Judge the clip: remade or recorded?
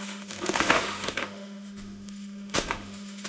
remade